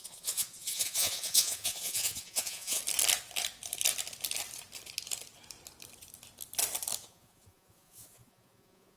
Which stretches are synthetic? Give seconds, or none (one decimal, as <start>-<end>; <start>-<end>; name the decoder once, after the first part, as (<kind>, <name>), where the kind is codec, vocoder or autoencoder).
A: 0.0-2.8 (vocoder, Vocos); 7.0-9.0